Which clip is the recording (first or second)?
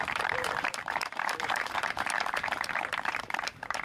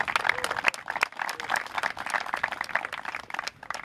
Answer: second